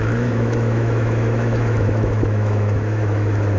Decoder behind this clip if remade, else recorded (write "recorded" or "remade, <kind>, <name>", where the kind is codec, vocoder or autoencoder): remade, autoencoder, DAC-VAE